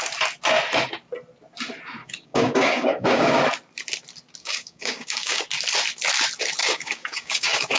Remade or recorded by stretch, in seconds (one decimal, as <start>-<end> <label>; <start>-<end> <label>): 0.0-2.0 recorded; 2.0-3.4 remade; 3.4-4.4 recorded; 4.4-5.4 remade; 5.4-6.6 recorded; 6.6-7.8 remade